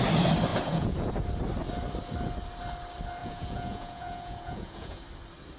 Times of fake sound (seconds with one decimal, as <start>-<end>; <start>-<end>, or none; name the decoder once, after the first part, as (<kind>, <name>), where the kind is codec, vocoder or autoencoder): 0.5-1.1 (vocoder, Vocos); 3.2-5.0